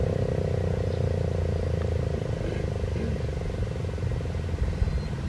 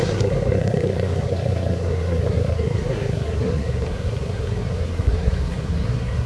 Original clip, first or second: first